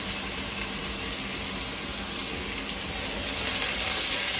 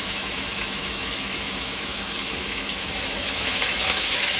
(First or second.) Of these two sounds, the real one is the first